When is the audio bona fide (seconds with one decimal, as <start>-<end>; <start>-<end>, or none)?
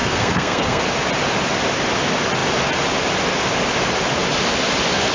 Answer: 0.8-5.1